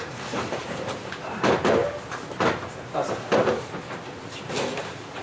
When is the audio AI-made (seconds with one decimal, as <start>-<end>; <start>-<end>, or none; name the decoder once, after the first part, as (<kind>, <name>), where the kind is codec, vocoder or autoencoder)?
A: 0.0-1.8 (vocoder, BigVGAN v2); 4.4-5.2